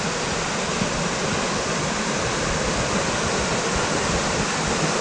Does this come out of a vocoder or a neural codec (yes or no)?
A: no